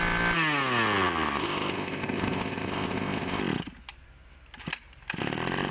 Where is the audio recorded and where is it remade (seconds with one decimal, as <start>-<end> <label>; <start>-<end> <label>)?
0.0-1.4 recorded; 1.4-3.4 remade; 3.4-5.7 recorded